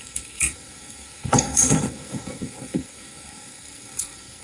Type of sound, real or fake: fake